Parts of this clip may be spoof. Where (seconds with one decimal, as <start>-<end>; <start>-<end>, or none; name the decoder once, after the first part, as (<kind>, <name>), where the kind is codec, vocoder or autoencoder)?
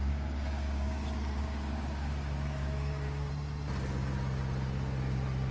0.0-3.3 (codec, DAC)